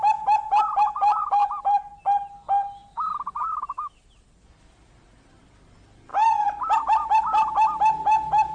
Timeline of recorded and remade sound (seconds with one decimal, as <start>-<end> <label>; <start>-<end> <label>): 0.0-1.4 recorded; 1.4-2.0 remade; 2.0-6.1 recorded; 6.1-6.8 remade; 6.8-8.5 recorded